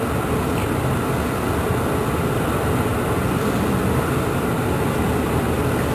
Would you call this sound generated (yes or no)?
no